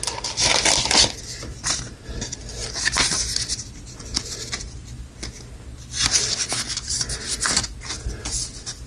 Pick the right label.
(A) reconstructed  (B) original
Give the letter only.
B